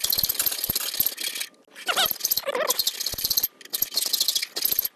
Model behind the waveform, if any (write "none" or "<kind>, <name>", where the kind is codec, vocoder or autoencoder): none